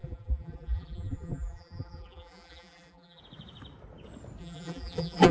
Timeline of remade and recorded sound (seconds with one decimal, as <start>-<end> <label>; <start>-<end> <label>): 0.0-3.2 remade; 3.2-4.4 recorded; 4.4-5.3 remade